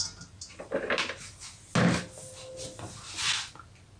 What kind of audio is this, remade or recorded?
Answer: recorded